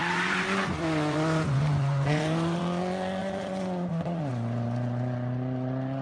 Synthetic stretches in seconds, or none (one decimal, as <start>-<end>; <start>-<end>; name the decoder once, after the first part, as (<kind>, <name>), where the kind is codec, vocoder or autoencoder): 0.0-2.6 (vocoder, Vocos); 3.2-4.3